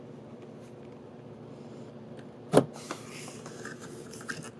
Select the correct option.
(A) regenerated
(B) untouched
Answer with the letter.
B